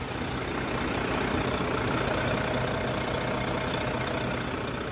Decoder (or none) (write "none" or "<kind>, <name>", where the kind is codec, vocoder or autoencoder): none